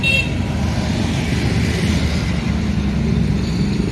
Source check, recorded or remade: recorded